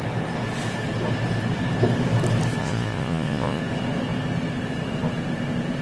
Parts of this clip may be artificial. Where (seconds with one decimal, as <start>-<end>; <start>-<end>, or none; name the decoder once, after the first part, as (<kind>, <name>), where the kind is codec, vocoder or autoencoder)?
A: 2.6-3.6 (vocoder, Vocos)